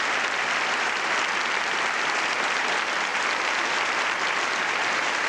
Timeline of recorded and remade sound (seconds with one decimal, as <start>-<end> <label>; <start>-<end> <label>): 0.0-3.1 remade; 3.1-4.0 recorded; 4.0-5.3 remade